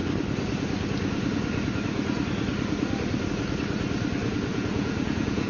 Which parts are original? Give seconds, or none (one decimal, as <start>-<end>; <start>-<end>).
0.0-4.5